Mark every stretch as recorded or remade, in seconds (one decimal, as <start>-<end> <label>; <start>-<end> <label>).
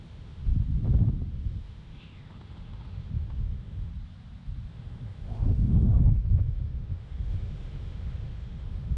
0.0-0.5 remade; 0.5-1.3 recorded; 1.3-3.9 remade; 3.9-4.7 recorded; 4.7-9.0 remade